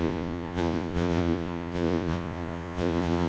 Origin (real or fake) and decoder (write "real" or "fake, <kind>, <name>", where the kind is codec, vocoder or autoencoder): fake, vocoder, Vocos